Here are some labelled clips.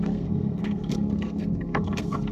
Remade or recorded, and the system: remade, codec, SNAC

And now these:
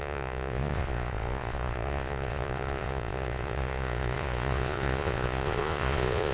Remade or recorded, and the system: remade, vocoder, Vocos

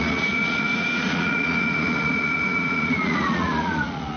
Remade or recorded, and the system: remade, vocoder, Vocos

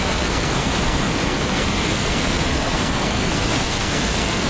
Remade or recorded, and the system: remade, codec, SNAC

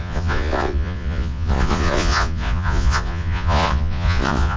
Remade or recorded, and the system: remade, vocoder, Vocos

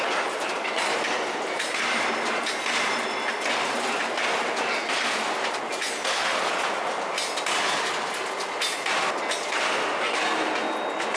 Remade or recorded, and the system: recorded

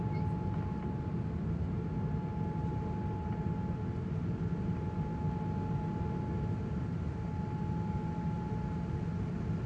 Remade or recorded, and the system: recorded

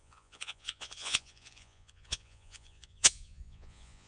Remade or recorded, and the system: remade, vocoder, Vocos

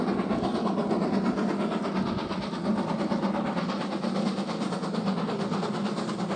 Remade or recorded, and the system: recorded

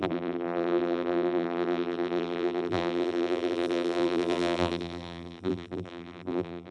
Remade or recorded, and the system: remade, vocoder, BigVGAN v2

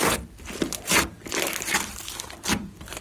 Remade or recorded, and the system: recorded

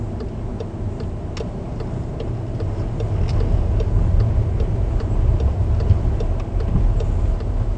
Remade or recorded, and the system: recorded